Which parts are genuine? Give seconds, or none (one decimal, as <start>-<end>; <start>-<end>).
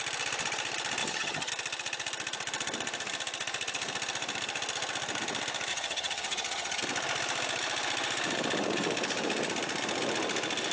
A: 0.0-1.0; 1.5-5.7; 6.8-10.7